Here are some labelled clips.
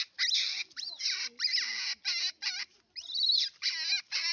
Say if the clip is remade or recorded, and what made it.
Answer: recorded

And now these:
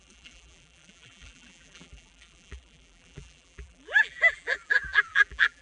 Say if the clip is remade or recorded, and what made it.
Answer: remade, vocoder, BigVGAN v2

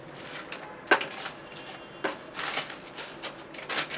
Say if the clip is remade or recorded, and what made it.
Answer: recorded